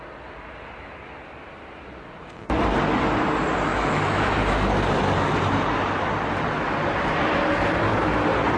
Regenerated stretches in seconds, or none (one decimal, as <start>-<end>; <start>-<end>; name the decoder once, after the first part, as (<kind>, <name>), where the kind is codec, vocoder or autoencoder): 3.7-4.4 (autoencoder, DAC-VAE)